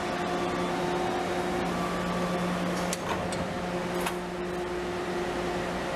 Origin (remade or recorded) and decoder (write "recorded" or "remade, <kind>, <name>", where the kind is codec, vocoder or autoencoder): recorded